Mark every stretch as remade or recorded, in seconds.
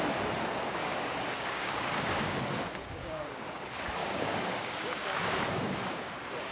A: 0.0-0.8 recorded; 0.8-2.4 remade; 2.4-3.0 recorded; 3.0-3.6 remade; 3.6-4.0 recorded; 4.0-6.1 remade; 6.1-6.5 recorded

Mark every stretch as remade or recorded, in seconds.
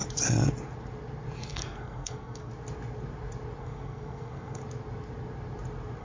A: 0.0-1.4 recorded; 1.4-2.5 remade; 2.5-3.6 recorded; 3.6-4.6 remade; 4.6-6.0 recorded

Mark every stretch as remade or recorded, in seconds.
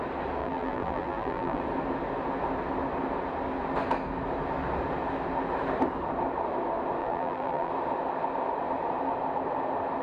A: 0.0-0.4 recorded; 0.4-1.6 remade; 1.6-7.0 recorded; 7.0-7.7 remade; 7.7-10.0 recorded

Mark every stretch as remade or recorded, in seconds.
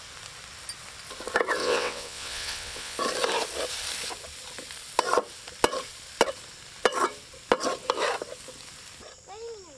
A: 0.0-1.6 recorded; 1.6-3.0 remade; 3.0-9.8 recorded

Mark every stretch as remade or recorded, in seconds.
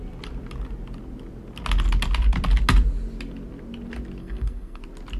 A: 0.0-4.2 recorded; 4.2-4.8 remade; 4.8-5.2 recorded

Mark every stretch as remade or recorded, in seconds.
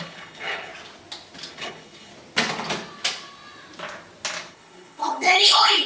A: 0.0-0.7 remade; 0.7-1.5 recorded; 1.5-2.1 remade; 2.1-4.5 recorded; 4.5-5.9 remade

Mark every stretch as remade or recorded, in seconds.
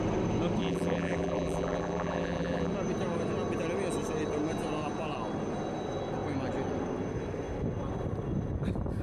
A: 0.0-0.6 recorded; 0.6-2.7 remade; 2.7-9.0 recorded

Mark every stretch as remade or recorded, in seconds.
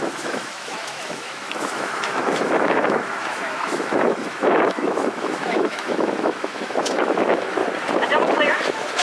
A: 0.0-7.6 remade; 7.6-8.5 recorded; 8.5-9.0 remade